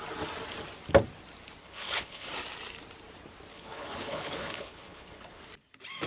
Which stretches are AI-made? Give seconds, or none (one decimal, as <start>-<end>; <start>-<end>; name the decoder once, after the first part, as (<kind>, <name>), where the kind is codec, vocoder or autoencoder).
1.6-2.3 (codec, HILCodec); 3.5-5.4